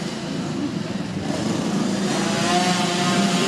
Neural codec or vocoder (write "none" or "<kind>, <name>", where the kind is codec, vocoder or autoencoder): none